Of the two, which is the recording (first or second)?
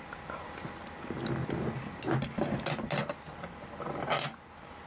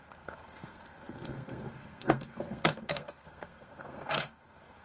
first